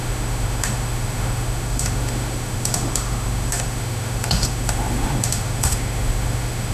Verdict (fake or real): fake